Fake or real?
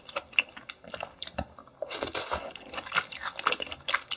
real